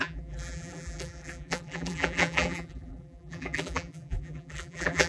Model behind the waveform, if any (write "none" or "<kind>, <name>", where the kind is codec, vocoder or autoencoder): vocoder, BigVGAN v2